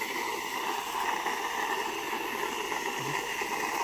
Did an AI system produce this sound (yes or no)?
no